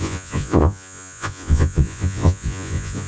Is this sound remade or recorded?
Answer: remade